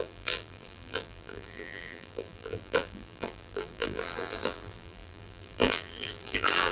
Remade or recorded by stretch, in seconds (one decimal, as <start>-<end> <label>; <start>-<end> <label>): 0.0-6.7 remade

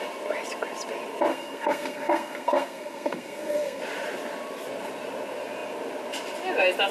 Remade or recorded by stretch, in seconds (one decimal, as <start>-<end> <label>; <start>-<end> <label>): 0.0-1.3 recorded; 1.3-3.8 remade; 3.8-6.9 recorded

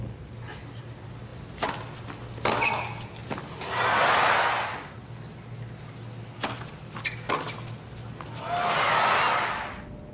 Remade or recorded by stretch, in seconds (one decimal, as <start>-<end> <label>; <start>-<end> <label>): 0.0-10.1 recorded

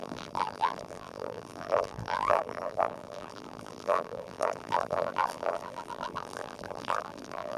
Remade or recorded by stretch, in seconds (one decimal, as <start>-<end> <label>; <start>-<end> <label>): 0.0-7.6 remade